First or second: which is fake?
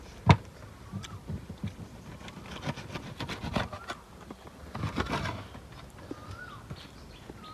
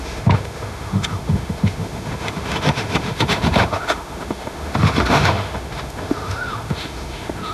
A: second